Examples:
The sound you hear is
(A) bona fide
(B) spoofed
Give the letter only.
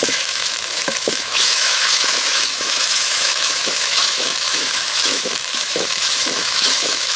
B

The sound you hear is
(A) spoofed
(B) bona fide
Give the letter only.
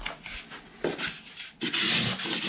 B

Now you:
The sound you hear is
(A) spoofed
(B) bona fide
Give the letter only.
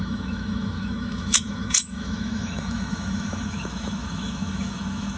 A